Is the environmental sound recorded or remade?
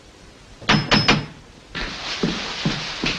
recorded